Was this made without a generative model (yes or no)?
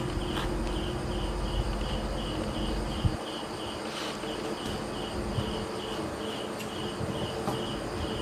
yes